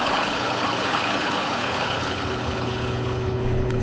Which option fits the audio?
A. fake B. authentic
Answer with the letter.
A